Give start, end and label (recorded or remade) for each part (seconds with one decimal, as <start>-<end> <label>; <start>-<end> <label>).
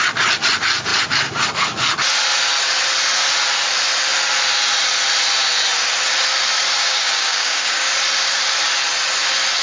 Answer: 0.0-6.8 recorded; 6.8-7.9 remade; 7.9-9.6 recorded